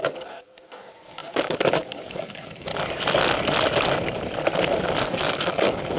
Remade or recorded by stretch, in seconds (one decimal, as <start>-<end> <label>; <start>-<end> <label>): 0.0-2.7 remade; 2.7-5.0 recorded; 5.0-6.0 remade